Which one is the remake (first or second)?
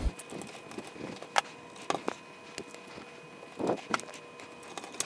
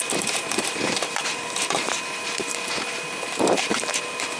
second